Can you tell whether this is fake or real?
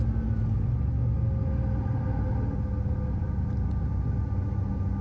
real